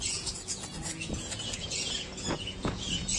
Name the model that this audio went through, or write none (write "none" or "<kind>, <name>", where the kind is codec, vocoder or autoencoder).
vocoder, Vocos